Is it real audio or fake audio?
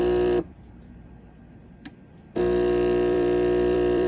fake